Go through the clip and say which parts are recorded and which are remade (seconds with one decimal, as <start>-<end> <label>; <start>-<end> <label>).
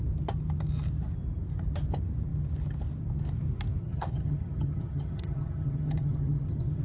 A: 0.0-3.8 recorded; 3.8-6.8 remade